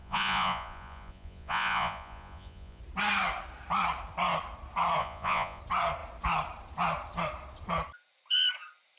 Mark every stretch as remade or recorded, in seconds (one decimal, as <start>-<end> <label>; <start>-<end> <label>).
0.0-2.8 remade; 2.8-5.0 recorded; 5.0-5.6 remade; 5.6-9.0 recorded